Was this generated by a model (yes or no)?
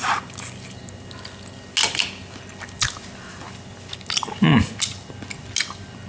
no